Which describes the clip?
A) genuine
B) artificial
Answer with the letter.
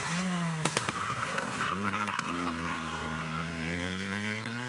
B